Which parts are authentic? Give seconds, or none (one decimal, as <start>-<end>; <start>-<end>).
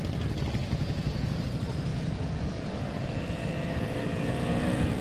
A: 0.0-0.6; 1.4-1.9